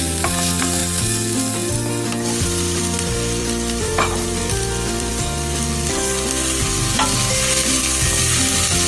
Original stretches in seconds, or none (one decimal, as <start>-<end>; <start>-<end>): 0.0-3.4; 5.1-8.9

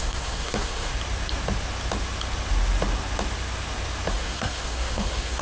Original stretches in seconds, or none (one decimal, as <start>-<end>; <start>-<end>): 0.9-4.1

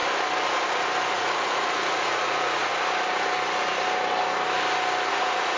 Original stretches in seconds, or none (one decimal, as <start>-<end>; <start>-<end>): 0.0-1.1; 2.7-5.1

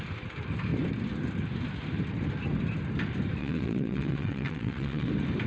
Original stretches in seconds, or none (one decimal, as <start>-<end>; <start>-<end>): 0.0-3.4; 5.1-5.5

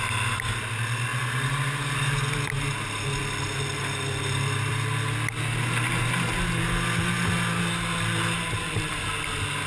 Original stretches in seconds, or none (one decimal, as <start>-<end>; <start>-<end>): 0.0-9.7

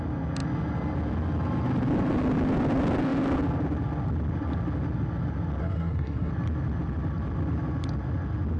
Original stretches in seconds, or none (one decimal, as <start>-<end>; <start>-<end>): 0.0-5.6; 6.3-8.6

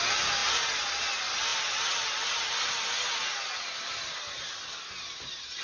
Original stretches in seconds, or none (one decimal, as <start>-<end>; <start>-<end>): 0.0-5.6